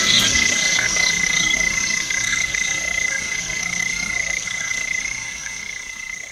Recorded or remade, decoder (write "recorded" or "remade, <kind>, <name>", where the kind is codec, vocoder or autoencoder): remade, codec, SNAC